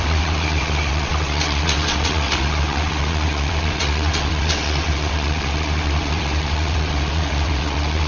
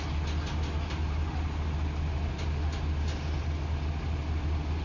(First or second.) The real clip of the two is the second